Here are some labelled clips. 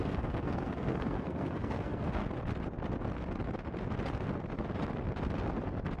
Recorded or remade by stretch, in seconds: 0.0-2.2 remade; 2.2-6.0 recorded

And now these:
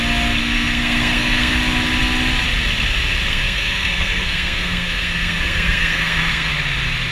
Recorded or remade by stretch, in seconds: 0.0-0.4 recorded; 0.4-1.5 remade; 1.5-3.3 recorded; 3.3-6.5 remade; 6.5-7.1 recorded